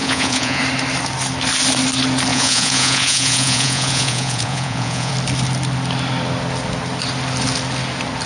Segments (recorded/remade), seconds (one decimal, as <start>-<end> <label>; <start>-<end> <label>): 0.0-0.6 remade; 0.6-2.3 recorded; 2.3-5.1 remade; 5.1-8.3 recorded